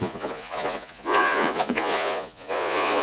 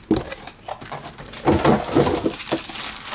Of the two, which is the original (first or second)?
second